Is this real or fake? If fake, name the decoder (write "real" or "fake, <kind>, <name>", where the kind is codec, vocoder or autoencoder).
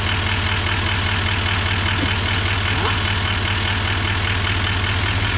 real